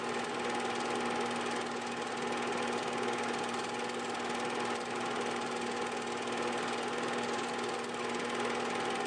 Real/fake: real